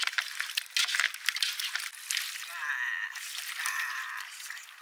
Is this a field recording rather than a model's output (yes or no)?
yes